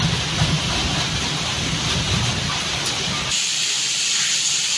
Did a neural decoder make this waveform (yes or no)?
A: yes